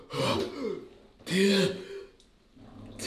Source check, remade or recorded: recorded